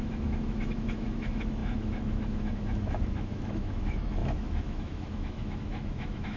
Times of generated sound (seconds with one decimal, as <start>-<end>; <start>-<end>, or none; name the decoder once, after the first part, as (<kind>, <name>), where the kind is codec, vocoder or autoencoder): 0.0-6.4 (autoencoder, DAC-VAE)